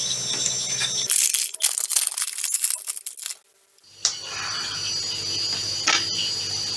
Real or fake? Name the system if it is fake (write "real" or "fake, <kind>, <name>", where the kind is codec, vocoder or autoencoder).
real